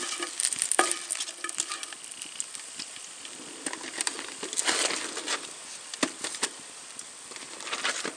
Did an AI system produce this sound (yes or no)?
no